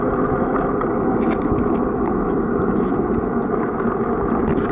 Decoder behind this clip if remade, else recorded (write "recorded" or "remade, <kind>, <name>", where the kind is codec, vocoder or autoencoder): recorded